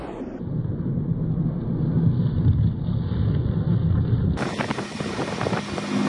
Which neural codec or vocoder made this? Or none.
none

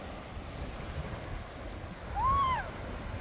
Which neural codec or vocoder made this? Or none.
none